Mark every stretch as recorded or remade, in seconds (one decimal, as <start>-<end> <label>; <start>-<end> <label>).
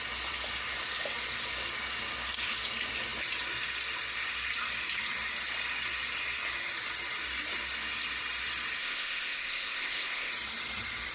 0.0-8.8 recorded; 8.8-10.3 remade; 10.3-11.1 recorded